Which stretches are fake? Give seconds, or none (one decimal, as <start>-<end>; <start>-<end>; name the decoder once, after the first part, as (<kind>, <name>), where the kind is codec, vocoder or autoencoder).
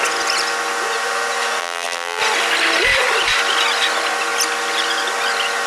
1.6-2.2 (vocoder, BigVGAN v2)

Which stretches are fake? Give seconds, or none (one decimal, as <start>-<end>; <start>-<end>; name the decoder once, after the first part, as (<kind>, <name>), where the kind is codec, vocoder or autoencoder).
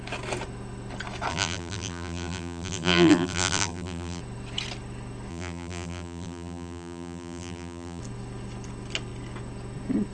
1.3-4.2 (vocoder, BigVGAN v2); 5.3-8.0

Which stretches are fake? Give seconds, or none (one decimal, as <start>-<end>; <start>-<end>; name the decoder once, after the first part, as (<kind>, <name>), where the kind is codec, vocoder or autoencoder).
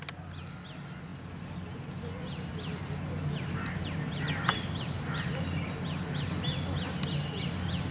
none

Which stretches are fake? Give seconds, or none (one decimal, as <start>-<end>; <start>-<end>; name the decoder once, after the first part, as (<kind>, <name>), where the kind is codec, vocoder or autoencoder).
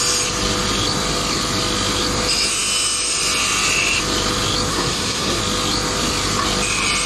4.7-5.4 (codec, SNAC)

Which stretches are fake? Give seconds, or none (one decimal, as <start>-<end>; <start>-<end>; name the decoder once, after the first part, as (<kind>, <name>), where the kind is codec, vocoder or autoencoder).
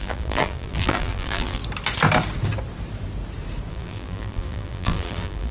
0.0-1.6 (vocoder, BigVGAN v2); 3.7-5.5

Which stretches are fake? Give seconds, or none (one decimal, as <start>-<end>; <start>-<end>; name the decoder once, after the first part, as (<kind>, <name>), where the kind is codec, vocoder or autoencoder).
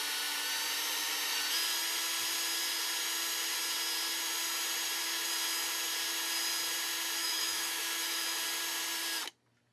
7.2-8.4 (autoencoder, DAC-VAE)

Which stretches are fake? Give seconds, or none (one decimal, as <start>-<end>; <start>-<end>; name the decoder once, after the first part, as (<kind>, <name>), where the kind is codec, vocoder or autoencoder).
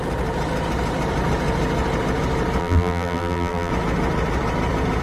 2.6-3.7 (vocoder, BigVGAN v2)